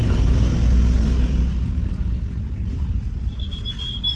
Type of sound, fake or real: real